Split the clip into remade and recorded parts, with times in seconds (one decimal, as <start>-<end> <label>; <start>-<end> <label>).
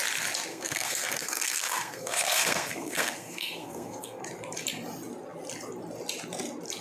0.0-0.5 recorded; 0.5-4.2 remade; 4.2-6.8 recorded